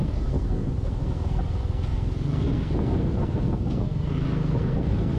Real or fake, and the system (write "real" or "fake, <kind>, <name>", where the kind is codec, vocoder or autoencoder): fake, codec, SNAC